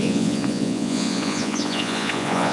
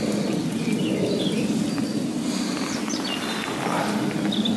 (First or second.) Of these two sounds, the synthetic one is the first